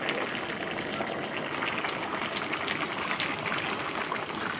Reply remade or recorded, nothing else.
recorded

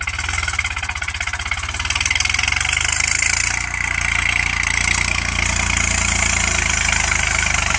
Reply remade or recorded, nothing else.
recorded